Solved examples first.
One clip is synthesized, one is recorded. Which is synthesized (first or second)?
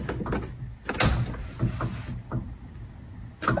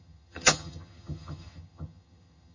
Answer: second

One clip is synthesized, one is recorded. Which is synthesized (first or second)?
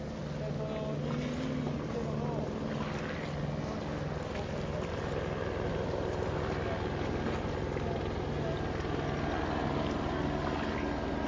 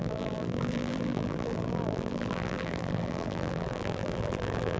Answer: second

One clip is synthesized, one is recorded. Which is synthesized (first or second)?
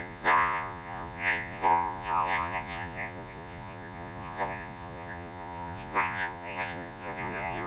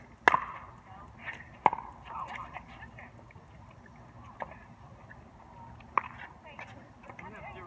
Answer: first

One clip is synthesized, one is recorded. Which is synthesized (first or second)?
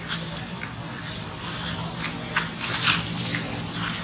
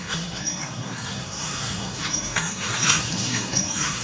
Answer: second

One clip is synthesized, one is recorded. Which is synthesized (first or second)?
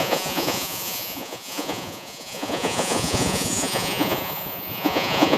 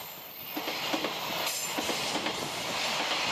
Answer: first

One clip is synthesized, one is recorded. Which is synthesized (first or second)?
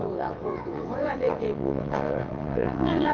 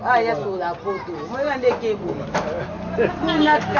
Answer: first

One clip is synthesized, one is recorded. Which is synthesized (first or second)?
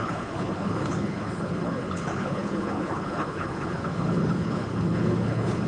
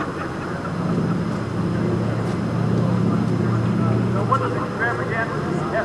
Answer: first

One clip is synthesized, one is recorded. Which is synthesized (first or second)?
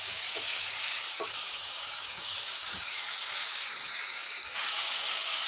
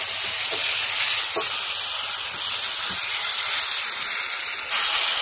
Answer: first